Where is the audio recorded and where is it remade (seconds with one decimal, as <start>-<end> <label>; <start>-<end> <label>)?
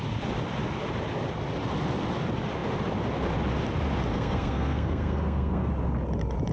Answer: 0.0-4.1 recorded; 4.1-5.7 remade; 5.7-6.5 recorded